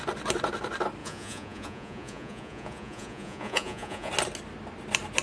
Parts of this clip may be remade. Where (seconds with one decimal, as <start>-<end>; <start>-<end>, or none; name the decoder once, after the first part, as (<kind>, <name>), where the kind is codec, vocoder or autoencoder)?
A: 1.0-4.1 (vocoder, Vocos)

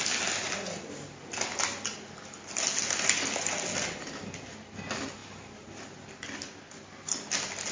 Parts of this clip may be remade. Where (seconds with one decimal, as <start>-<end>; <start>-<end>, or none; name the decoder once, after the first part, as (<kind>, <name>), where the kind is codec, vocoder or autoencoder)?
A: none

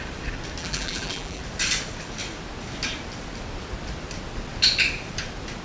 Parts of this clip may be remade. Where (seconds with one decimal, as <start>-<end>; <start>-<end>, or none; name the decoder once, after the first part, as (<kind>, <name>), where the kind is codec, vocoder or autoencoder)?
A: 0.6-1.4 (vocoder, BigVGAN v2)

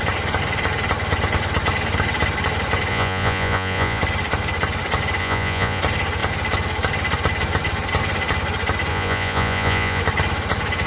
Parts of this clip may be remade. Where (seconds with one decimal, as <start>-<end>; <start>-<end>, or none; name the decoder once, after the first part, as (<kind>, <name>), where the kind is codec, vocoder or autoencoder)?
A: 2.9-4.0 (vocoder, Vocos); 5.2-5.8; 8.9-10.0